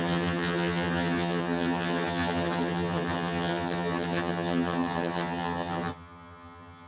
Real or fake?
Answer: fake